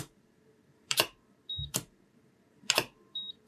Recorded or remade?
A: remade